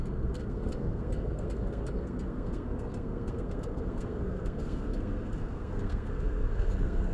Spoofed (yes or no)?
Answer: yes